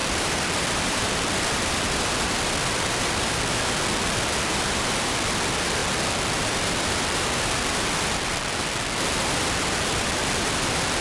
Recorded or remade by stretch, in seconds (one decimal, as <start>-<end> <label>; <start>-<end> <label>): 0.0-5.8 remade; 5.8-6.4 recorded; 6.4-11.0 remade